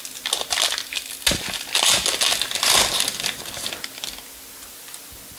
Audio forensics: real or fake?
real